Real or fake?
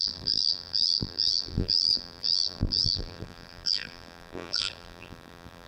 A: fake